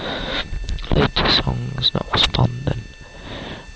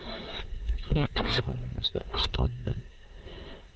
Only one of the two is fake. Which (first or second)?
second